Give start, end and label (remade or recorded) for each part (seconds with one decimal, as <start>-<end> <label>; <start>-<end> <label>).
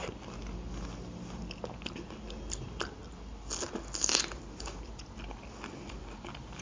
0.0-6.6 recorded